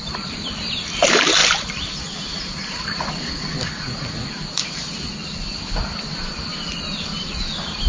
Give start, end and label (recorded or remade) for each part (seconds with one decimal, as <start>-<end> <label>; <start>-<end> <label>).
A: 0.0-7.9 recorded